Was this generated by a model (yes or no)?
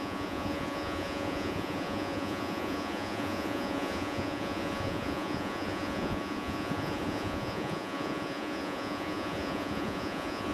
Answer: yes